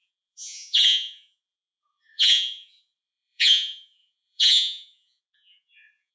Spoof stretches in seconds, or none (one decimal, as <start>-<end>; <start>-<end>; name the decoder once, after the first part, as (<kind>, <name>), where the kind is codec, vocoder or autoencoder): 0.0-6.1 (vocoder, Vocos)